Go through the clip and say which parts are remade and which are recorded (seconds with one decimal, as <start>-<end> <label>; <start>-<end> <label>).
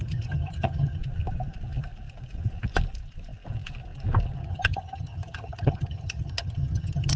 0.0-1.0 remade; 1.0-4.4 recorded; 4.4-7.2 remade